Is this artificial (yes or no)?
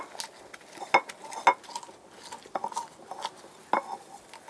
no